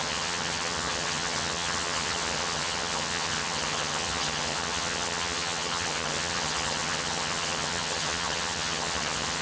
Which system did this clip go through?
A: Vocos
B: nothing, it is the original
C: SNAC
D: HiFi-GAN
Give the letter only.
D